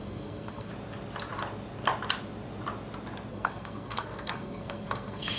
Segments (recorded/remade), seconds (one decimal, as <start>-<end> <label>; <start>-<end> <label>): 0.0-0.7 remade; 0.7-3.3 recorded; 3.3-5.4 remade